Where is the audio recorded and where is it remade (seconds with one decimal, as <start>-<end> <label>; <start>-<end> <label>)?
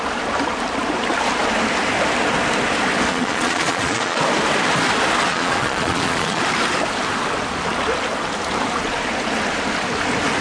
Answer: 0.0-3.1 recorded; 3.1-4.2 remade; 4.2-5.3 recorded; 5.3-6.4 remade; 6.4-10.4 recorded